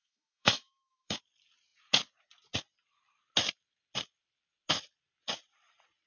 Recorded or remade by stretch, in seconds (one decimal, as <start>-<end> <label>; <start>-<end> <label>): 0.0-1.2 remade; 1.2-6.1 recorded

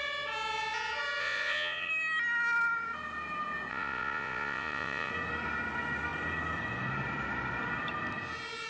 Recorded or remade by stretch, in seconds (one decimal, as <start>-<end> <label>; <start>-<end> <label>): 0.0-1.2 recorded; 1.2-1.9 remade; 1.9-3.7 recorded; 3.7-5.1 remade; 5.1-8.7 recorded